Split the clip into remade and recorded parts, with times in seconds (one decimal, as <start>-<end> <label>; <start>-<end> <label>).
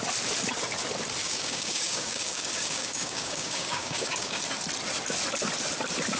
0.0-1.2 recorded; 1.2-4.4 remade; 4.4-6.2 recorded